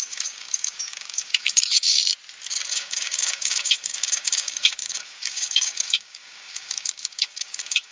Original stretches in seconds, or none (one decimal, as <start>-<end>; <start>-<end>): 2.0-2.7

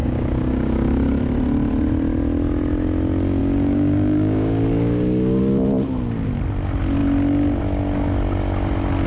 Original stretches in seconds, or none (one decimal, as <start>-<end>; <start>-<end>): 1.1-3.4; 5.4-9.1

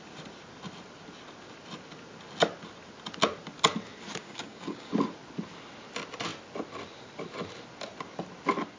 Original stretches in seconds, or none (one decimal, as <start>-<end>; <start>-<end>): 0.0-4.2; 4.9-8.8

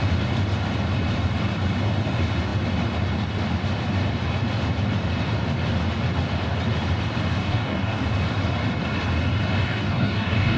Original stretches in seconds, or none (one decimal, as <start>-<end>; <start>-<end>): 0.0-7.4; 8.1-9.6

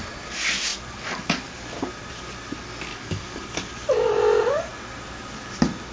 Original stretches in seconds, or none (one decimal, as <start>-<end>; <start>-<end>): 0.0-2.9; 3.7-5.9

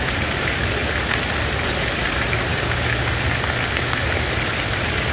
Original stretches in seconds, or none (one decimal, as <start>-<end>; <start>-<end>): 0.0-2.5; 3.1-5.1